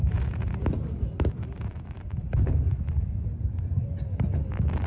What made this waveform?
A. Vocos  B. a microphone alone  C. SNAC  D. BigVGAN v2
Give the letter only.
D